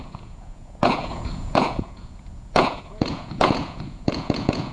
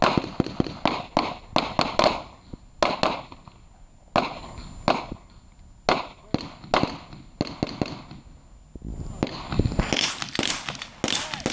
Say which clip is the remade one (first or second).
first